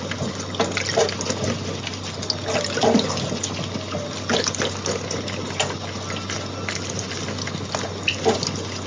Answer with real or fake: real